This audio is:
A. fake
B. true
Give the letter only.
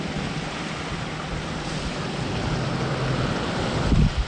B